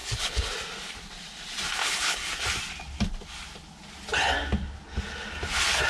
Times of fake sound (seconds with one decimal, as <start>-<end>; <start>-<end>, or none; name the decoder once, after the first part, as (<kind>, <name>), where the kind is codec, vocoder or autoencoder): 0.0-0.5 (codec, HILCodec); 1.8-2.3

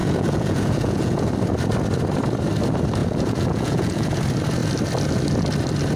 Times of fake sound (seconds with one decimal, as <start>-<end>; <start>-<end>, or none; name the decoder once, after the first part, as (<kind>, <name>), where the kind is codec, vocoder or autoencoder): 0.0-1.3 (vocoder, Vocos); 3.0-4.1

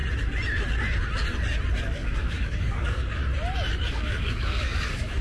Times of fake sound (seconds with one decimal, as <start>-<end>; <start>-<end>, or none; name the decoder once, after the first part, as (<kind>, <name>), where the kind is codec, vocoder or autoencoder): 1.8-3.2 (codec, DAC); 3.9-5.2

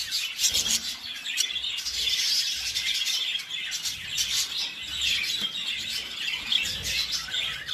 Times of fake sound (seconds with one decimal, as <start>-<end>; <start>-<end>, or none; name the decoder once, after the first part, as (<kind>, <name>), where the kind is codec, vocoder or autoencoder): none

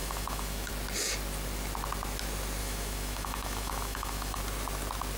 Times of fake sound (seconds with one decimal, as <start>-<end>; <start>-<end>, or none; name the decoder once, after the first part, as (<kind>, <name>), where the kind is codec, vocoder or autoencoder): 0.0-0.7 (autoencoder, DAC-VAE); 2.6-4.4

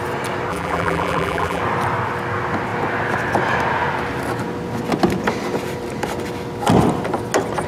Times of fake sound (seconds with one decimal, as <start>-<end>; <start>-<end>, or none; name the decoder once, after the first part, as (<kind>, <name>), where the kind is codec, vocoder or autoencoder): 0.5-1.6 (vocoder, BigVGAN v2)

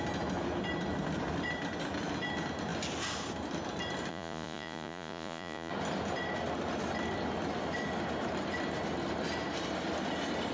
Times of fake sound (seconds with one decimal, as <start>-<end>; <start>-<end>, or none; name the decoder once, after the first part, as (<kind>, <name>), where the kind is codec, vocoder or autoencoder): 4.1-5.7 (vocoder, Vocos)